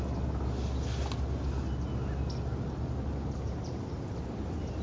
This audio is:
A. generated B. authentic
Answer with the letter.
B